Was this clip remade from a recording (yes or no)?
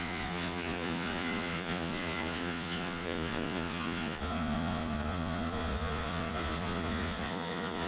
yes